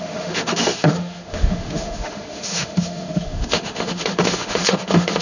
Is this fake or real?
fake